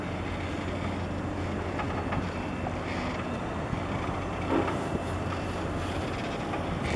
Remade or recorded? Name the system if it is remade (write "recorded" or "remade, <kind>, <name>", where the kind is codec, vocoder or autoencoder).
recorded